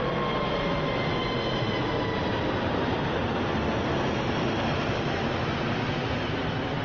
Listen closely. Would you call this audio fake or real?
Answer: real